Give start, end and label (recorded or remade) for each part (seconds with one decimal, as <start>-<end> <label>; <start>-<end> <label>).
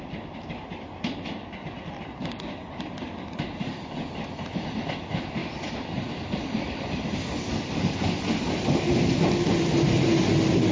0.0-10.7 recorded